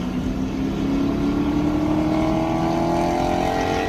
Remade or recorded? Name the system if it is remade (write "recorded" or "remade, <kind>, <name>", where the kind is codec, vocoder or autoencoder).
recorded